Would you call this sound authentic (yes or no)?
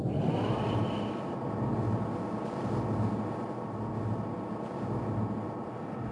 yes